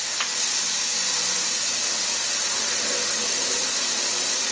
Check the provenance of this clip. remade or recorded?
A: recorded